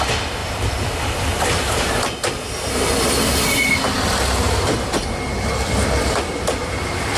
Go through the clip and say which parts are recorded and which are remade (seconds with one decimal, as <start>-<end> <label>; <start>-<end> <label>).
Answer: 0.0-7.2 recorded